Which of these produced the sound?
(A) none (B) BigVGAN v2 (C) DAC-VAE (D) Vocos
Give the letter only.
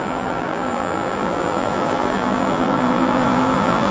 B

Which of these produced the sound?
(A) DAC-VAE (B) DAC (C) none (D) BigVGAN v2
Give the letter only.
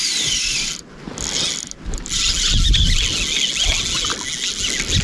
C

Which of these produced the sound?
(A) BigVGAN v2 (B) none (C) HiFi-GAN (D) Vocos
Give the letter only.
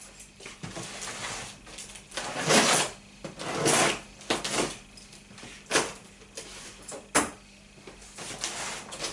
B